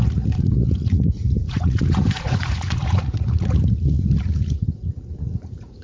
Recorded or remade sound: remade